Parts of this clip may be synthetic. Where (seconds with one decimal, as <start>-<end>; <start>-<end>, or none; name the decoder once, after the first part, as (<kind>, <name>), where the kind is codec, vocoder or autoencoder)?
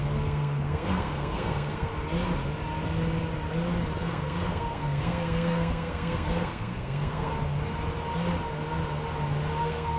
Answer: 0.0-1.9 (codec, SNAC); 4.0-7.3; 9.6-10.0